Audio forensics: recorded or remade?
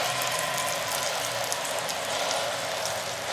recorded